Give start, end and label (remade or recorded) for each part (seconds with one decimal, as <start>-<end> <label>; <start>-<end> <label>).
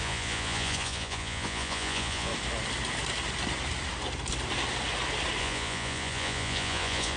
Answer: 0.0-2.3 remade; 2.3-5.4 recorded; 5.4-7.2 remade